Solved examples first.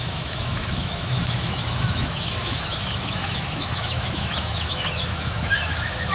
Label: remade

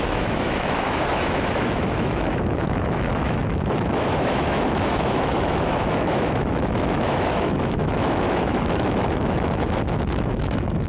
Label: remade